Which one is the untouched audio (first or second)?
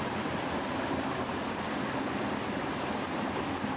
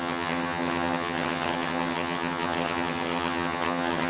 first